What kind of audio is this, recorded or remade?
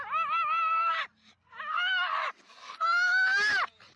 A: recorded